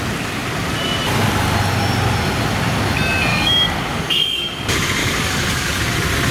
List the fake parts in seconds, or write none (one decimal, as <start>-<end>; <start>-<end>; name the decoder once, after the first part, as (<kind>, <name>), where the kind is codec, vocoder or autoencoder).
3.3-4.6 (codec, DAC); 5.0-5.8